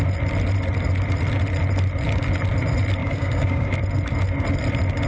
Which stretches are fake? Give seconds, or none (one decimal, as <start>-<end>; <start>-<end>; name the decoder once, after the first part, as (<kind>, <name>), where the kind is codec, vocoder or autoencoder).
3.0-3.8 (codec, DAC)